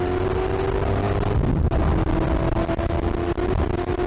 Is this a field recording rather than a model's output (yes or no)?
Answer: yes